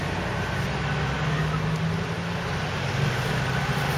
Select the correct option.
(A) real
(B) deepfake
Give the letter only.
A